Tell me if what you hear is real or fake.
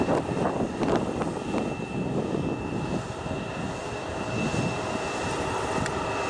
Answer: real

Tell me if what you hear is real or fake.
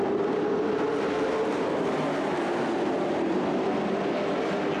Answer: real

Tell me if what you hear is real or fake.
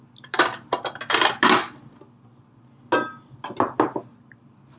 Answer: real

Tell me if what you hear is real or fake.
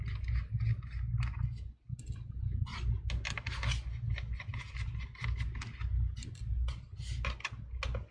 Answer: real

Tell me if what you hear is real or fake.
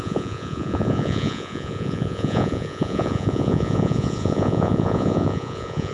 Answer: fake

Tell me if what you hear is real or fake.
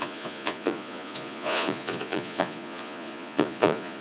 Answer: fake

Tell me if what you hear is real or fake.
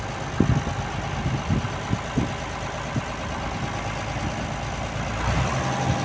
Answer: real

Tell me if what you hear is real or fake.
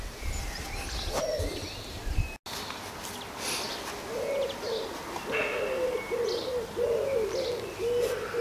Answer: real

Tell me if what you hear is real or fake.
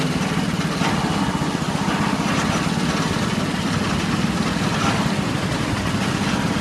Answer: real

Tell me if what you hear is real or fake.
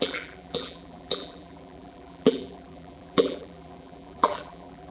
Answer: fake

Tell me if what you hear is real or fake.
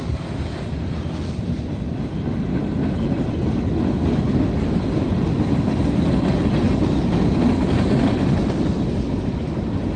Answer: real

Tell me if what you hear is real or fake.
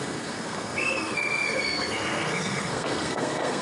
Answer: fake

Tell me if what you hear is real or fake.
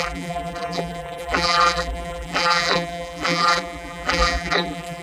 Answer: fake